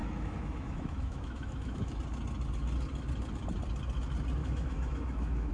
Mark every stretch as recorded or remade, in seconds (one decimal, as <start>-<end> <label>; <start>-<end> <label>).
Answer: 0.0-2.0 remade; 2.0-4.4 recorded; 4.4-5.5 remade